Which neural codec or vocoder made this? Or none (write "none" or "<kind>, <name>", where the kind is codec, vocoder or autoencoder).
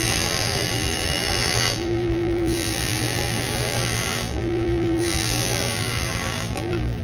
vocoder, BigVGAN v2